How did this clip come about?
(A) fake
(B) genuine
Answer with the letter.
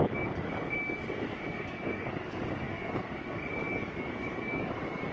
A